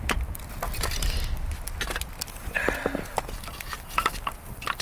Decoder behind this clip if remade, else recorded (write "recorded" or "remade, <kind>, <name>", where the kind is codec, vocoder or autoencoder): recorded